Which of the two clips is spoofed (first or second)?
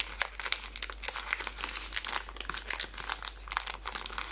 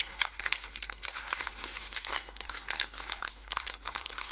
second